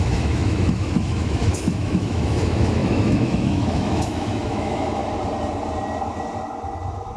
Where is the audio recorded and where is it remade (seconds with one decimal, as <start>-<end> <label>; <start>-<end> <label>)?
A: 0.0-5.0 remade; 5.0-7.2 recorded